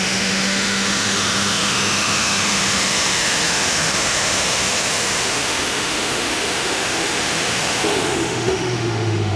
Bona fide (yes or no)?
no